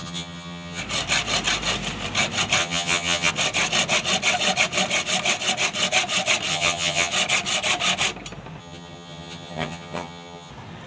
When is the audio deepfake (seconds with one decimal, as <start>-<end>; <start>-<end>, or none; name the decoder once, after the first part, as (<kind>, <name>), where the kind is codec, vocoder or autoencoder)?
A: 0.0-0.8 (vocoder, HiFi-GAN); 2.6-3.3; 6.5-7.1; 8.6-10.5